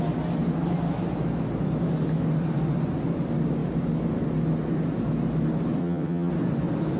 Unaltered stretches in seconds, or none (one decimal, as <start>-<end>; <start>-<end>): 0.0-5.8; 6.3-7.0